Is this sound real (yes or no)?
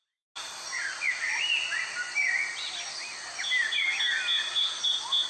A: yes